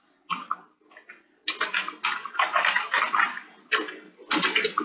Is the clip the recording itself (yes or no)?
yes